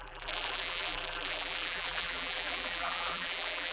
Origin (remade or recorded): remade